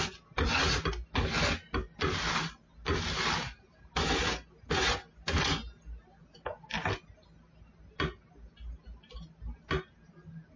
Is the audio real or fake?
real